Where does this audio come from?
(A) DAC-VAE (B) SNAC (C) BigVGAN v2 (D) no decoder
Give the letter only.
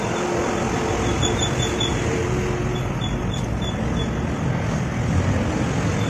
D